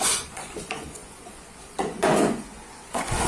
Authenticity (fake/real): fake